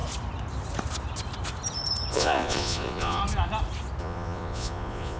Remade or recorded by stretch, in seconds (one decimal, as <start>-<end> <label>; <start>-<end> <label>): 0.0-2.1 recorded; 2.1-3.2 remade; 3.2-4.0 recorded; 4.0-5.2 remade